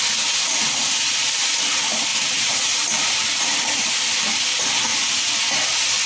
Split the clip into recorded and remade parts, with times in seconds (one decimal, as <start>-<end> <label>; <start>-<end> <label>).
0.0-2.1 recorded; 2.1-3.9 remade; 3.9-6.1 recorded